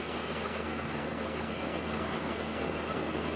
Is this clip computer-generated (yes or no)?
yes